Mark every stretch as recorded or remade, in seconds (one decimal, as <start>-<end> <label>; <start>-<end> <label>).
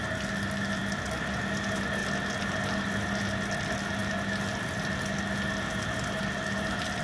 0.0-7.0 recorded